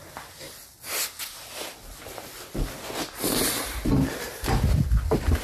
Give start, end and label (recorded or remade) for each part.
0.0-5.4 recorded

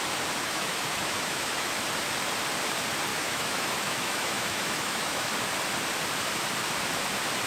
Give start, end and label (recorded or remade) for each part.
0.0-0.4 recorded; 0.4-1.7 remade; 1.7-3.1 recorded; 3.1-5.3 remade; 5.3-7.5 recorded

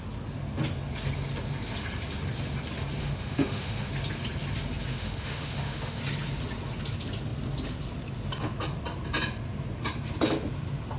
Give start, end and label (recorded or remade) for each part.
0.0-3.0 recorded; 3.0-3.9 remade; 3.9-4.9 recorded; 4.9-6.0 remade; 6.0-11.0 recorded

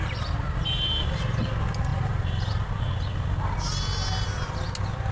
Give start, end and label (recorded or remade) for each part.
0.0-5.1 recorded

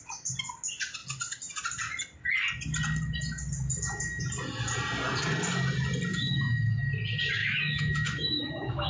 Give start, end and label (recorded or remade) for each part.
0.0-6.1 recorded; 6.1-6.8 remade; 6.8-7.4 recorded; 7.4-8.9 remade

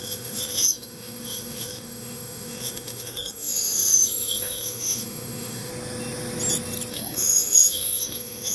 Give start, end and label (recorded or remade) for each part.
0.0-5.7 remade; 5.7-6.9 recorded; 6.9-8.5 remade

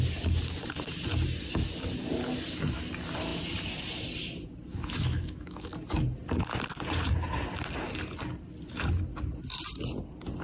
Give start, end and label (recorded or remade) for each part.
0.0-4.7 recorded; 4.7-5.7 remade; 5.7-10.4 recorded